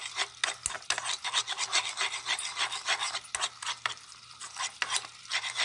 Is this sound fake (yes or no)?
no